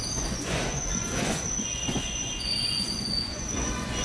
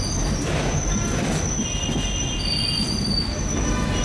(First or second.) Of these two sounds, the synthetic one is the first